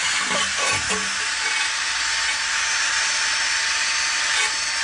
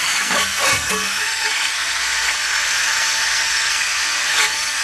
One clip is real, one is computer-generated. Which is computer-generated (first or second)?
second